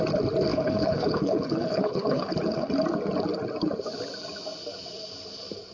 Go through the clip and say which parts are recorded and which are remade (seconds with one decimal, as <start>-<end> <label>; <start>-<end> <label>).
0.0-0.5 recorded; 0.5-2.7 remade; 2.7-5.7 recorded